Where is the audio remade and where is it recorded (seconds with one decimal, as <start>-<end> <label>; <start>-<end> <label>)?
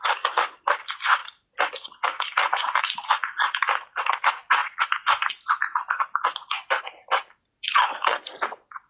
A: 0.0-8.9 recorded